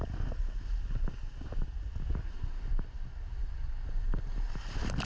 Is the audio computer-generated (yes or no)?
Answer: no